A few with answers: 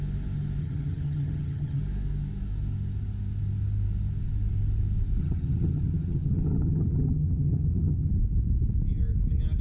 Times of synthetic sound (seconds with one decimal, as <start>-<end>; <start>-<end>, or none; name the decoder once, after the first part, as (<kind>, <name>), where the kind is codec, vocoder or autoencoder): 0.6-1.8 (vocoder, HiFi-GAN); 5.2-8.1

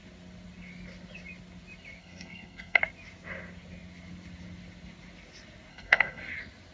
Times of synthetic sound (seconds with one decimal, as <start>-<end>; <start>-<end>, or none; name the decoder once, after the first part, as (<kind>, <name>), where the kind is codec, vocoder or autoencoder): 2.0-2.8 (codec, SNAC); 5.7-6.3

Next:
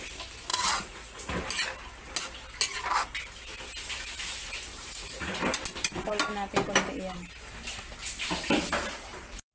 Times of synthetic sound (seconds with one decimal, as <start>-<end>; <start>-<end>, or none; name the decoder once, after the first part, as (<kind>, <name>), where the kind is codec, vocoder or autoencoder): 0.5-1.3 (vocoder, Vocos); 4.8-5.4

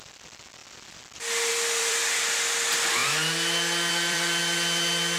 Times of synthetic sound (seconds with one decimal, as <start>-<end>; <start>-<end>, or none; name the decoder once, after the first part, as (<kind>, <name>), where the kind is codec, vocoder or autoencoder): 0.0-0.6 (vocoder, BigVGAN v2); 1.5-3.0; 3.9-4.4